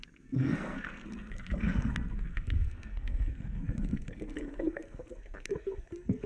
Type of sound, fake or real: fake